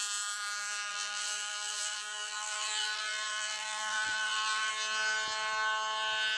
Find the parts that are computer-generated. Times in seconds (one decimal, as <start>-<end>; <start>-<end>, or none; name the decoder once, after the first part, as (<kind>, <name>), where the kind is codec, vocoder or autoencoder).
0.9-4.7 (vocoder, BigVGAN v2)